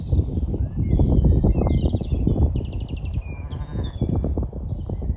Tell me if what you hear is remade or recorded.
recorded